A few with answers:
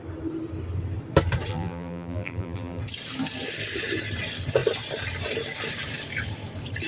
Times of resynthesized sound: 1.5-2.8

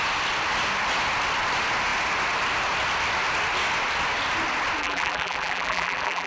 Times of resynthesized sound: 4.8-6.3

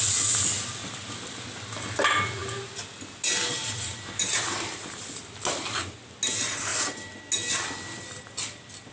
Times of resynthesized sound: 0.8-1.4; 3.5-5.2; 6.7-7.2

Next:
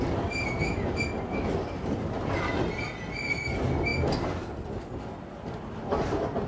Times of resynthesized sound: none

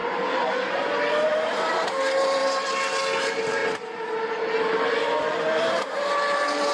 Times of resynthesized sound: 0.0-2.4; 3.2-3.6; 4.4-6.7

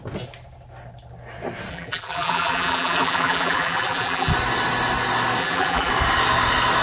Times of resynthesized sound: 1.7-4.3; 5.4-5.9